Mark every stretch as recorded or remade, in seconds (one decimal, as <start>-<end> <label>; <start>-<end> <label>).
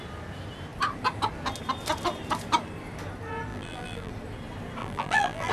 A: 0.0-3.5 recorded; 3.5-4.1 remade; 4.1-4.8 recorded; 4.8-5.5 remade